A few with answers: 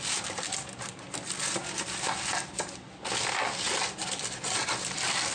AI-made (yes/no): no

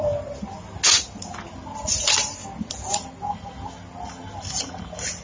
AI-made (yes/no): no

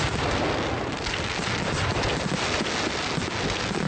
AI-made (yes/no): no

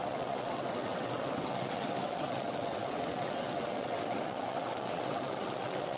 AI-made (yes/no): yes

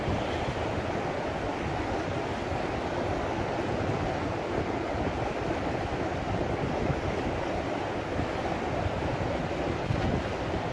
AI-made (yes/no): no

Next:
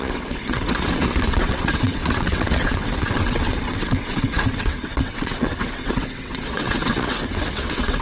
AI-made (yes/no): yes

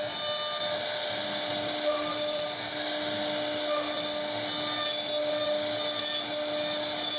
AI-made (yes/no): no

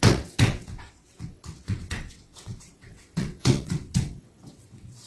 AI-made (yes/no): yes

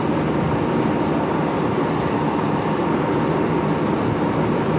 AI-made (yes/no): no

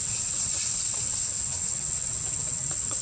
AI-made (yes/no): yes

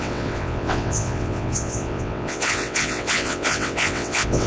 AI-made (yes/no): yes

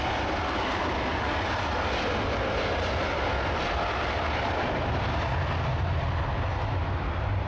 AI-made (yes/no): no